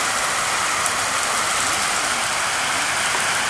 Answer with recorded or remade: recorded